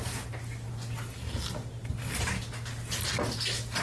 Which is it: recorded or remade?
recorded